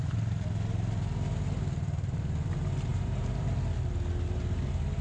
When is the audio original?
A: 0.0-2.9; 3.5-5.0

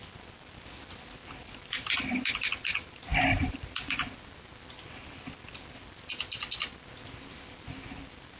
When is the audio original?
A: 0.0-8.4

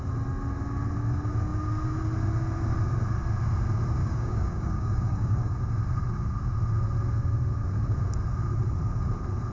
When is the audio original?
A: 0.0-4.0; 5.5-9.5

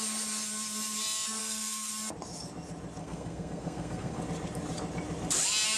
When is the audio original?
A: 0.0-1.4; 1.9-3.0; 4.2-5.8

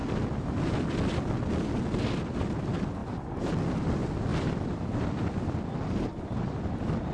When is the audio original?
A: 0.6-4.3

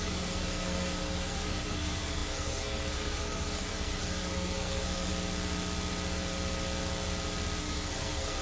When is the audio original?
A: 5.1-7.6

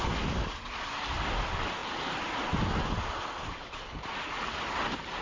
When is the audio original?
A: 0.0-5.2